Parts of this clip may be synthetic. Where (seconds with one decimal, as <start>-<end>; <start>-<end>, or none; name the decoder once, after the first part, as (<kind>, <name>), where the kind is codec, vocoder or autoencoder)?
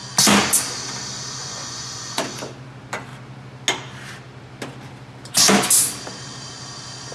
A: 1.4-2.2 (vocoder, Vocos)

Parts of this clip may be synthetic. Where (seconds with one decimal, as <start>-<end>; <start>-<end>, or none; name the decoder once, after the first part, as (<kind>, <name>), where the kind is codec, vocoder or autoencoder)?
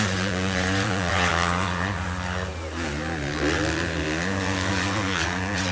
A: 0.0-1.3 (vocoder, Vocos); 4.7-5.7